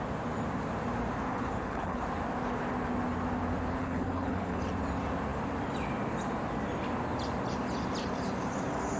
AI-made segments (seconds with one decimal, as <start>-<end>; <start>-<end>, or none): 1.3-2.0; 3.8-4.6